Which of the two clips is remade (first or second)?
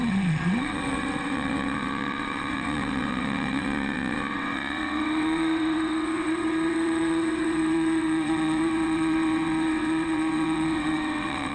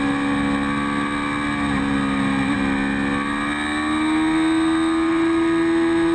first